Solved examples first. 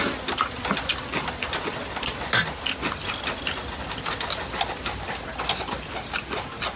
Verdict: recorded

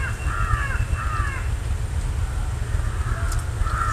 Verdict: recorded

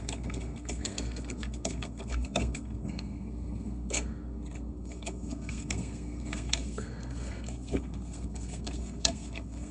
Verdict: remade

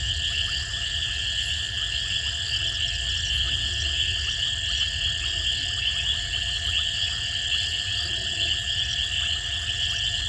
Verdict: recorded